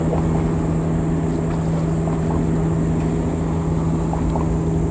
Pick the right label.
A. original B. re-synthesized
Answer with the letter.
A